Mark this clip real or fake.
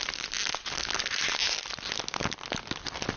real